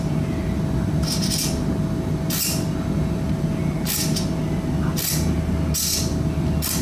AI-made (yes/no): no